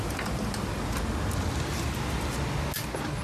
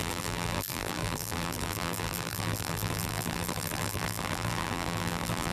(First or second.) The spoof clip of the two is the second